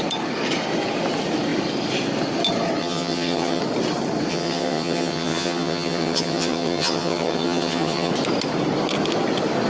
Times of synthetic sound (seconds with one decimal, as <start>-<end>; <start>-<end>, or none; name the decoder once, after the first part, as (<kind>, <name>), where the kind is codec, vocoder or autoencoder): 2.8-3.6 (vocoder, HiFi-GAN); 4.3-8.1